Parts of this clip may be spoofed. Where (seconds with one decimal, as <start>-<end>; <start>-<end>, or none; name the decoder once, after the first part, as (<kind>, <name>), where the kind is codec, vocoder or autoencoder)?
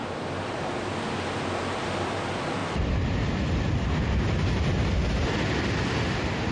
none